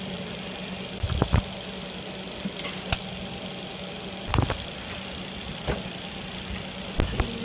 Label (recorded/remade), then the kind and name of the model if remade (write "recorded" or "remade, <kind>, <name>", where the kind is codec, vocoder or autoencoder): recorded